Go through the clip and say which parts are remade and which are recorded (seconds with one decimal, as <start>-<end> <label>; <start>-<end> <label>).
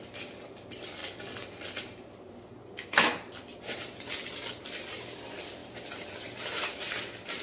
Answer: 0.0-5.6 recorded; 5.6-7.0 remade; 7.0-7.4 recorded